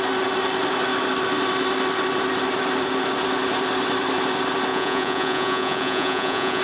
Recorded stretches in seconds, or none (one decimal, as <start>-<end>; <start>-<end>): 0.0-4.7